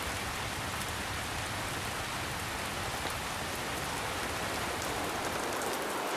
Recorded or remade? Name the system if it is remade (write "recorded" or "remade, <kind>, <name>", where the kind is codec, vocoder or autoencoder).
recorded